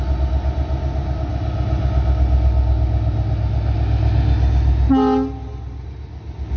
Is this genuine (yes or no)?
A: yes